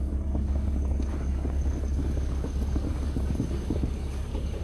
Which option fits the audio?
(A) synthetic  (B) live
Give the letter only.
A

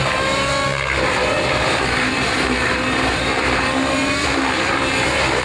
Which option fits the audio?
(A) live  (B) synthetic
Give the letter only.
B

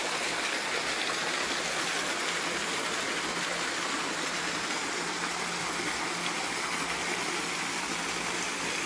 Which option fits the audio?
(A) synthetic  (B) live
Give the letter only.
B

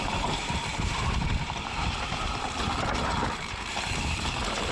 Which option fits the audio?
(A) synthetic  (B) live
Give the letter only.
A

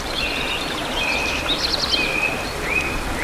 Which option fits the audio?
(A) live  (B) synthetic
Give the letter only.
A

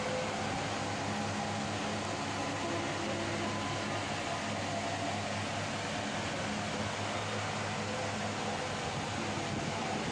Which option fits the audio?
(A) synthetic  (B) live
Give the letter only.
B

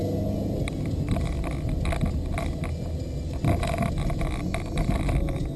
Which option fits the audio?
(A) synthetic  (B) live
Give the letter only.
B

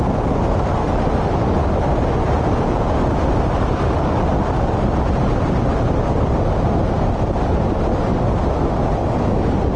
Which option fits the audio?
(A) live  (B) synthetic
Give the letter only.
A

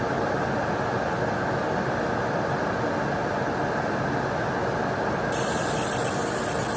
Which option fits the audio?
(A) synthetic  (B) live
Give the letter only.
B